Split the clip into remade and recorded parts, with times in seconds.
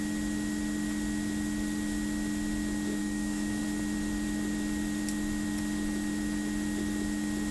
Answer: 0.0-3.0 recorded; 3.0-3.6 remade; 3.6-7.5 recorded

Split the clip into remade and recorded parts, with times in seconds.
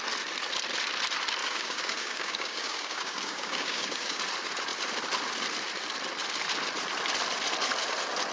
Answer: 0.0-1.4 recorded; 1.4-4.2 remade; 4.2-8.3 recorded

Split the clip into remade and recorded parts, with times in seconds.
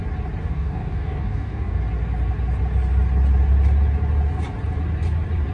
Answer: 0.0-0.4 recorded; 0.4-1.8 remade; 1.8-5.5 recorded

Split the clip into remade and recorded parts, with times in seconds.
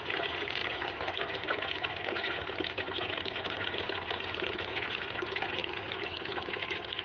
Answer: 0.0-0.6 recorded; 0.6-1.2 remade; 1.2-5.6 recorded; 5.6-6.2 remade; 6.2-7.0 recorded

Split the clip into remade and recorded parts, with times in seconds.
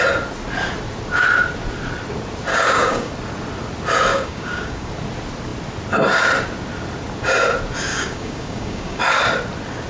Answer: 0.0-2.5 recorded; 2.5-3.1 remade; 3.1-4.1 recorded; 4.1-4.9 remade; 4.9-7.9 recorded; 7.9-9.0 remade; 9.0-9.9 recorded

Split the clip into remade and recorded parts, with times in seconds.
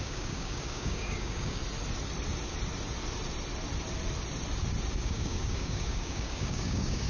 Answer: 0.0-1.6 remade; 1.6-5.0 recorded; 5.0-7.1 remade